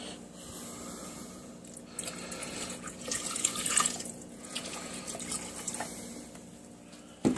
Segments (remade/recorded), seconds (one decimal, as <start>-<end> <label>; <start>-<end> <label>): 0.0-1.0 recorded; 1.0-1.5 remade; 1.5-2.4 recorded; 2.4-5.0 remade; 5.0-7.4 recorded